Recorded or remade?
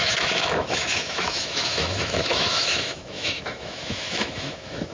remade